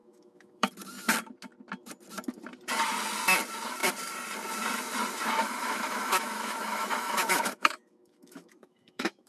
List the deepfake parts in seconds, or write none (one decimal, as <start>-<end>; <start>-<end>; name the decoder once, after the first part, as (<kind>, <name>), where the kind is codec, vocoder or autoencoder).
0.0-0.7 (autoencoder, DAC-VAE); 5.4-9.3